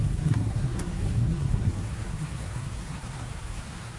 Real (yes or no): no